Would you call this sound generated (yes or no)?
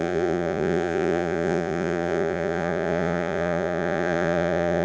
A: yes